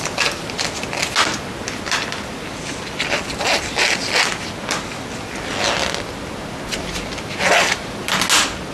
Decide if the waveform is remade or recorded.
recorded